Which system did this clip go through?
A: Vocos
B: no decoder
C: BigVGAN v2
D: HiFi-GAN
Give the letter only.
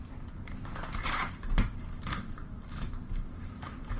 C